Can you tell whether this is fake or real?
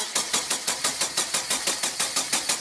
real